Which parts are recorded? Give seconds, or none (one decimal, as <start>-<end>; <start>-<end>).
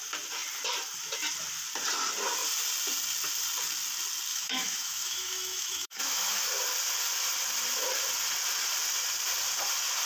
0.0-4.3; 6.5-10.1